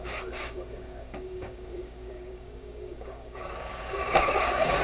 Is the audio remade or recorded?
remade